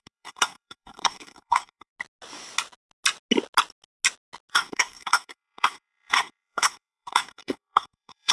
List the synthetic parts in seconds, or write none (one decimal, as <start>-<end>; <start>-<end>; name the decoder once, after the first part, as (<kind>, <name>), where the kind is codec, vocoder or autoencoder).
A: 0.0-1.9 (codec, SNAC); 4.5-8.3